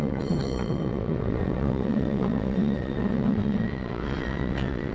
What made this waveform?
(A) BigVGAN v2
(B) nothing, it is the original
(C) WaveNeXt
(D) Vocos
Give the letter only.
C